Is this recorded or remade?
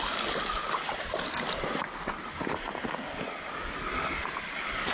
recorded